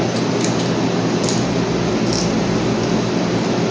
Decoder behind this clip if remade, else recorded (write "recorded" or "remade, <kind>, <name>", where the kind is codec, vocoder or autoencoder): recorded